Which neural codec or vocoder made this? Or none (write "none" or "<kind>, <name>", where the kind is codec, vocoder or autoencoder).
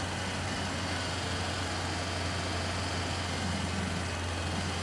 none